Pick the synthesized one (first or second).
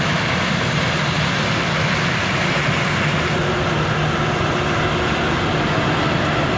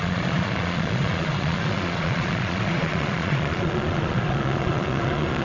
second